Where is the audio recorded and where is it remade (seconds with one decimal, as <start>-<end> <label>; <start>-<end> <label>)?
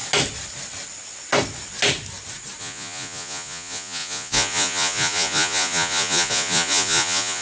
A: 0.0-2.6 recorded; 2.6-7.4 remade